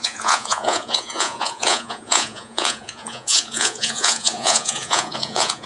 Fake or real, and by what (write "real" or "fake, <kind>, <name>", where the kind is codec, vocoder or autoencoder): fake, vocoder, Vocos